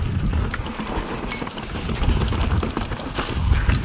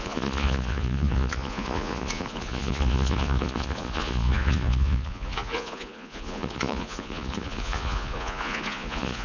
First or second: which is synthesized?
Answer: second